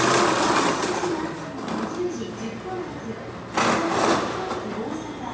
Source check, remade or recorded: recorded